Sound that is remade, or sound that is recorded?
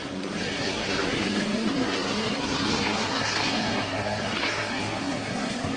remade